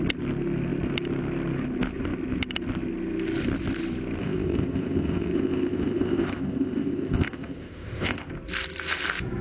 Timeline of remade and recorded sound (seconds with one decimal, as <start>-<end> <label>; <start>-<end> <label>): 0.0-4.2 recorded; 4.2-8.3 remade; 8.3-9.4 recorded